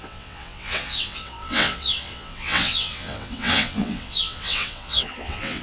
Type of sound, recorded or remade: remade